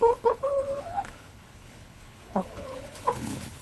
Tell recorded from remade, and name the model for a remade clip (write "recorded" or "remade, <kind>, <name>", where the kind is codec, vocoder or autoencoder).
remade, codec, HILCodec